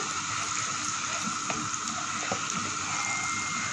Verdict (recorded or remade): recorded